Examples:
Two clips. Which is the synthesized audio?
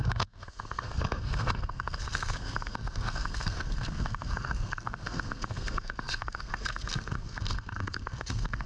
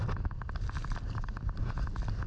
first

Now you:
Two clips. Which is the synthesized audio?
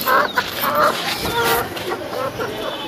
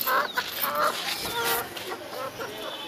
first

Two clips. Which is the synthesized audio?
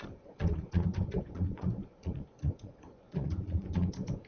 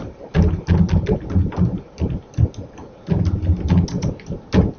first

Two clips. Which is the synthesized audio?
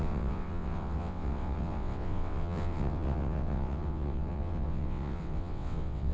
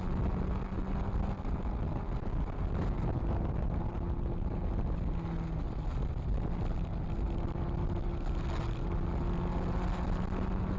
first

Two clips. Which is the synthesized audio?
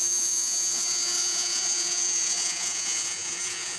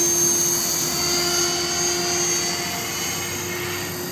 first